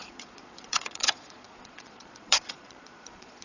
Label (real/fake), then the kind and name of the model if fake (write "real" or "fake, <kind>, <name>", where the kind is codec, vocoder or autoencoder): fake, vocoder, Vocos